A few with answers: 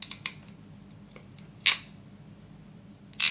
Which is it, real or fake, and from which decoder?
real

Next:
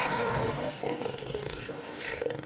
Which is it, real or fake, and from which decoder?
fake, codec, DAC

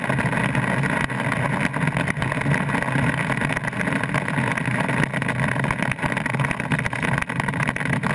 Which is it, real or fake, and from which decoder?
real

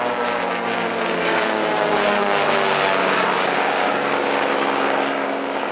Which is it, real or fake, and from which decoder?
fake, codec, DAC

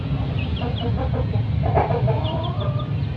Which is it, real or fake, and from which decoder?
real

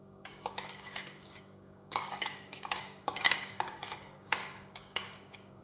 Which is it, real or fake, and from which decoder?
fake, codec, DAC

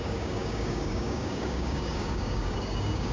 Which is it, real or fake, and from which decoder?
fake, codec, DAC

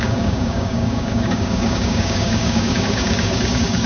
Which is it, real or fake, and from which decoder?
fake, codec, DAC